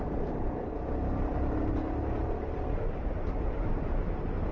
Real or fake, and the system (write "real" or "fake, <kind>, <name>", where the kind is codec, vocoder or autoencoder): real